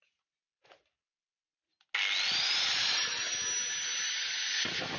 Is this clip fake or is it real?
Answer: real